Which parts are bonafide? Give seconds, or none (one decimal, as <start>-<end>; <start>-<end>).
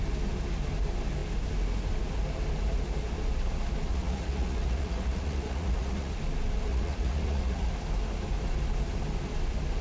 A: 0.0-3.9; 6.1-6.7; 7.7-9.8